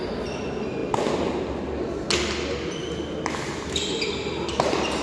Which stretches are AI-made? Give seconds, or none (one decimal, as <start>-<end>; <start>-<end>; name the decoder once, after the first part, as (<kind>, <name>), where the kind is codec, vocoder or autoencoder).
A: none